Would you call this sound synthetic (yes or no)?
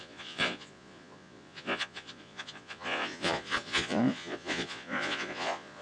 yes